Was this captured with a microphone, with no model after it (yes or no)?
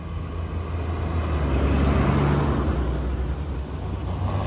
yes